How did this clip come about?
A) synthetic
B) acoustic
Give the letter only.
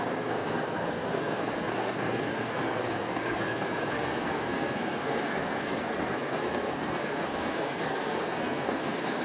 A